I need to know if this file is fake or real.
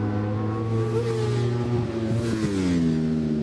real